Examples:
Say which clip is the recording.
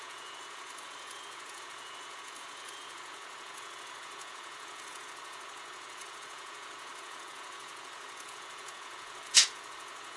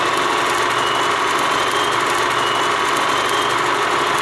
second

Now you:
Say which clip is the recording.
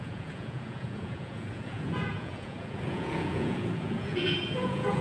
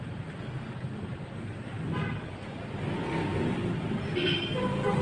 second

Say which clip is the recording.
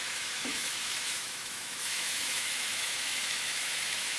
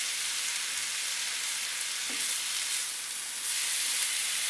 second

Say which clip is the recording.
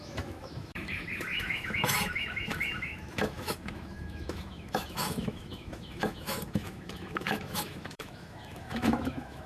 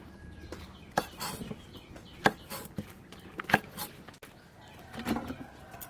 second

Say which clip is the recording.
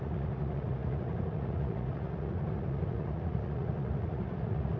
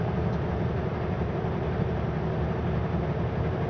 second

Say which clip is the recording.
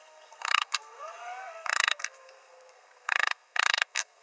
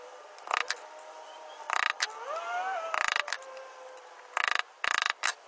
second